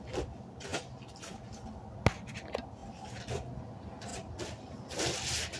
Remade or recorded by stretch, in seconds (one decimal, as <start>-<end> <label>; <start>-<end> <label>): 0.0-5.6 recorded